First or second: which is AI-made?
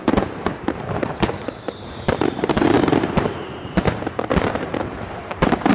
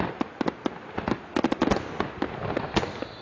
first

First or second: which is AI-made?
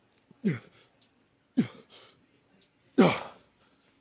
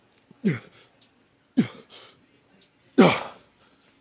first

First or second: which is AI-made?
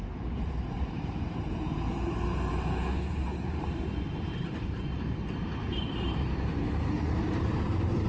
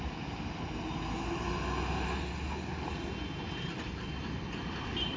first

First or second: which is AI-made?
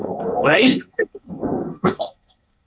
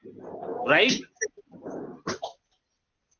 first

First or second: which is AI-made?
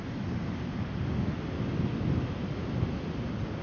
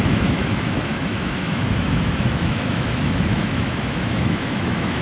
second